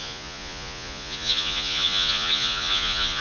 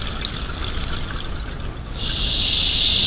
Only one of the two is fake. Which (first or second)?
first